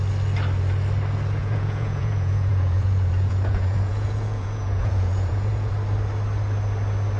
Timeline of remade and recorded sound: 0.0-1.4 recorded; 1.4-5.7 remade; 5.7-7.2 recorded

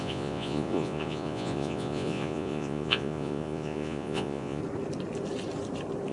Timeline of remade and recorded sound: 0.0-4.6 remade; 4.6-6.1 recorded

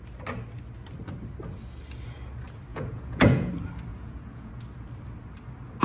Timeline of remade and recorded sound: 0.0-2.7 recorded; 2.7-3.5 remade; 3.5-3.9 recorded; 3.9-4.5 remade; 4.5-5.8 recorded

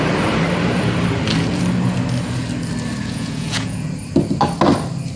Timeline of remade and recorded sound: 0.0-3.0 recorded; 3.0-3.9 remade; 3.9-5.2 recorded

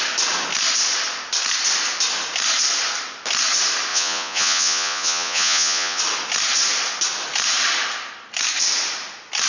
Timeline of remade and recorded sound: 0.0-3.9 recorded; 3.9-6.0 remade; 6.0-9.5 recorded

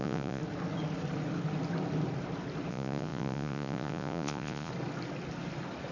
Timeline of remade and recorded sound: 0.0-0.4 remade; 0.4-2.7 recorded; 2.7-4.7 remade; 4.7-5.9 recorded